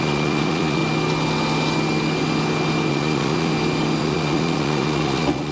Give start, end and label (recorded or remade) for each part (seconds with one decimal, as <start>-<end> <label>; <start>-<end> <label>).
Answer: 0.0-0.8 remade; 0.8-2.9 recorded; 2.9-3.5 remade; 3.5-4.0 recorded; 4.0-5.5 remade